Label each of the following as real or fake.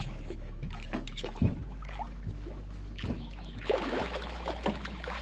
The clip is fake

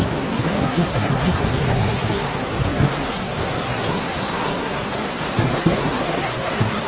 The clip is fake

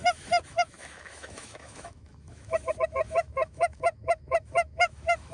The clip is fake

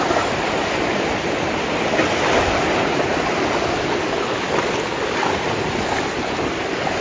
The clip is real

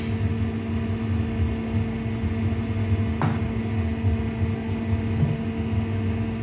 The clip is real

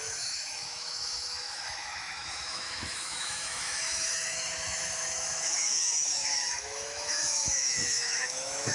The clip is fake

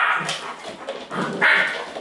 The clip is real